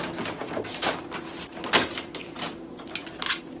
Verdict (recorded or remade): recorded